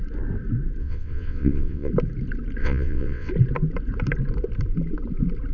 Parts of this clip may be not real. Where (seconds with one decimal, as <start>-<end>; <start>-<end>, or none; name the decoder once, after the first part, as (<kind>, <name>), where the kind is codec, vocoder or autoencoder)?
0.8-1.9 (vocoder, WaveNeXt); 2.6-3.3